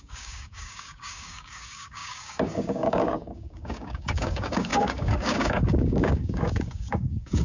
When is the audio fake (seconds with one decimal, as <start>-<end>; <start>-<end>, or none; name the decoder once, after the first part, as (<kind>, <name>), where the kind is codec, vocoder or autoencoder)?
0.0-7.4 (codec, DAC)